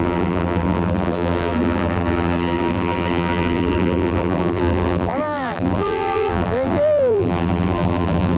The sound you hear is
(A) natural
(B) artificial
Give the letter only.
B